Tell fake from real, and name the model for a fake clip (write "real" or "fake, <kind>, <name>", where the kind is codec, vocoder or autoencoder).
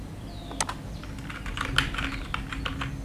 real